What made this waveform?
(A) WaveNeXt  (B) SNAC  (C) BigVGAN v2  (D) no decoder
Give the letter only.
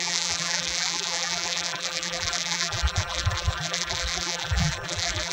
C